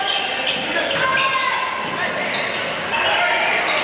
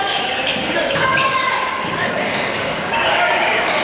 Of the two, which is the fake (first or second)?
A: second